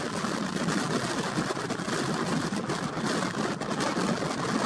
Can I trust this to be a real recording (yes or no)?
yes